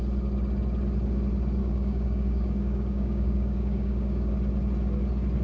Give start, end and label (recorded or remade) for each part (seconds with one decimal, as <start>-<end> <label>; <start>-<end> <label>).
0.0-1.6 recorded; 1.6-4.3 remade; 4.3-5.4 recorded